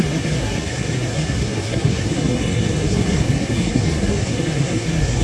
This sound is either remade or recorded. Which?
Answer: remade